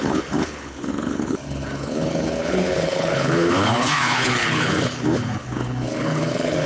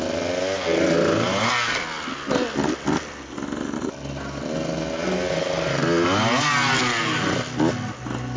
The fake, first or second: first